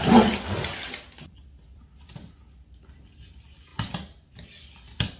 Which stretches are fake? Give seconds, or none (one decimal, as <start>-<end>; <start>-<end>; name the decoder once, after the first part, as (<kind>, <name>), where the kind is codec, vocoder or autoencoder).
none